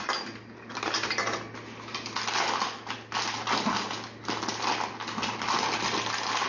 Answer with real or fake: real